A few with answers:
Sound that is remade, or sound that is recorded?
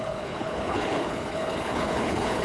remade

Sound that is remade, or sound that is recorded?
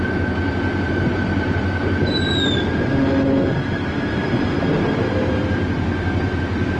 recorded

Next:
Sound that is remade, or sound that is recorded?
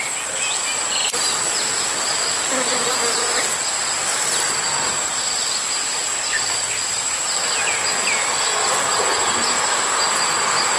recorded